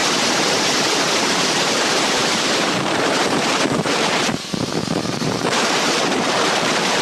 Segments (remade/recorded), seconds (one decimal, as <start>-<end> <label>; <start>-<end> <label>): 0.0-1.2 recorded; 1.2-7.0 remade